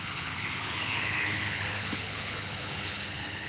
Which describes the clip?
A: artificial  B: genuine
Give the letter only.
A